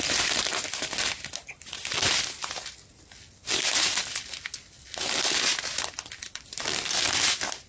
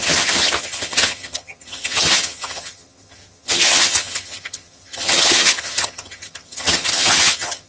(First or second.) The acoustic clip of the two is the first